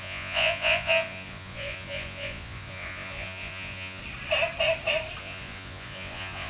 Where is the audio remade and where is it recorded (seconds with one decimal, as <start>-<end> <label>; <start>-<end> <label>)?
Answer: 0.0-4.0 remade; 4.0-5.2 recorded; 5.2-6.5 remade